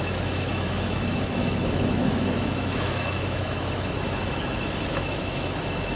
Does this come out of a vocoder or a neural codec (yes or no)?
yes